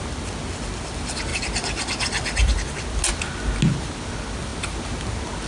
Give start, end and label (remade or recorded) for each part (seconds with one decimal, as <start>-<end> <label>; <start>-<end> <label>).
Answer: 0.0-5.5 recorded